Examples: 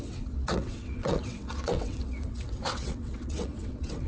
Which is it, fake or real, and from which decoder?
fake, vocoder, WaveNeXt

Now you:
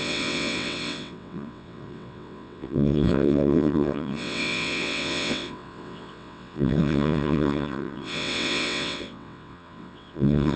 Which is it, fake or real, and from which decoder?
fake, vocoder, WaveNeXt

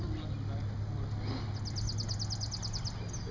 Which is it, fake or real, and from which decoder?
real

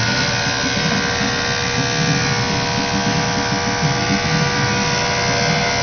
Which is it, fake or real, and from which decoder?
real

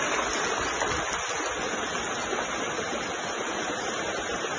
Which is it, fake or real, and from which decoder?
real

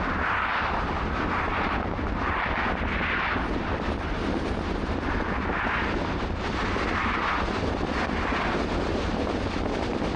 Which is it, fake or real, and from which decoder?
real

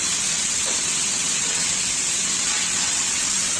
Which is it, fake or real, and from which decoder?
fake, vocoder, WaveNeXt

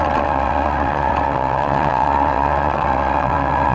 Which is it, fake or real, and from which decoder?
fake, vocoder, WaveNeXt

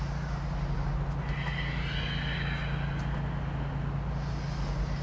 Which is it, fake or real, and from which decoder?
real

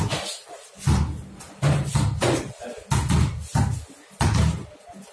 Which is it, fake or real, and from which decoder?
real